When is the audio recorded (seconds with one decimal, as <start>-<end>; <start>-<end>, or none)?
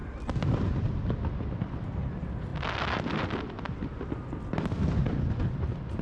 0.0-6.0